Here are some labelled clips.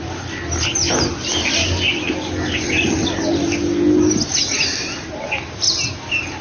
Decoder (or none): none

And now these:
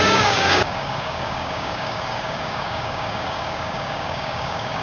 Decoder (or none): codec, DAC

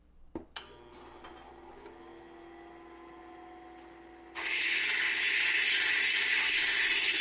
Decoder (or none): none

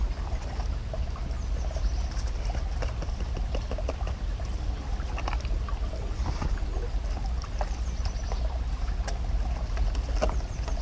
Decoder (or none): none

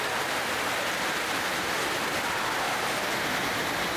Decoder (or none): none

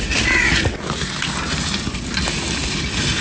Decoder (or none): none